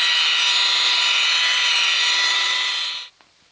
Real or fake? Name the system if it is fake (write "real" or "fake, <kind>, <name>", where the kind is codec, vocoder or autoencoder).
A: real